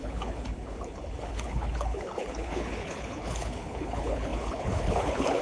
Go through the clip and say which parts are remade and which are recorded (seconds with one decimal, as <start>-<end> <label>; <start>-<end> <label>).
0.0-5.4 remade